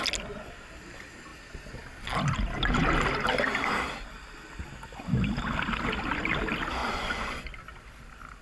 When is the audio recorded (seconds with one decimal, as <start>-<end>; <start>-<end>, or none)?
0.0-6.8; 7.4-8.4